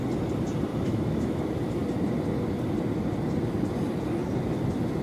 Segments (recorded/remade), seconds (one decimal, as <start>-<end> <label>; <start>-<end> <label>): 0.0-0.7 recorded; 0.7-1.4 remade; 1.4-5.0 recorded